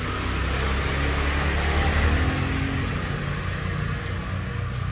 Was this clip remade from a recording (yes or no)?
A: no